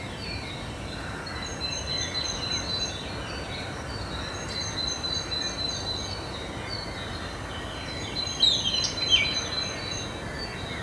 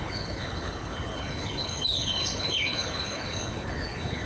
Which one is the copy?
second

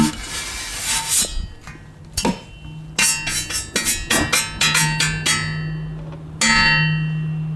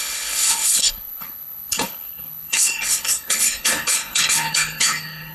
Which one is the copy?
second